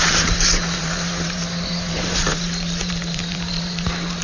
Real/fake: fake